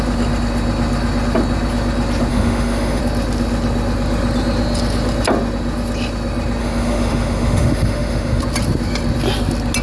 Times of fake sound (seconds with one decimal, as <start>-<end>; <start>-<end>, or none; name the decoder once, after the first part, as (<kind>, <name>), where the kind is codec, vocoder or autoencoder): 2.3-3.0 (autoencoder, DAC-VAE); 6.6-8.4